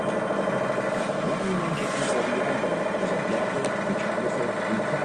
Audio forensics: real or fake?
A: real